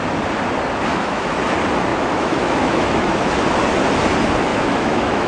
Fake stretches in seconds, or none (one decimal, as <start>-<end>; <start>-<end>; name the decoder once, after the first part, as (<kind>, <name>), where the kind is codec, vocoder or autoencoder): 0.9-1.4 (autoencoder, DAC-VAE); 1.9-3.3; 4.5-5.3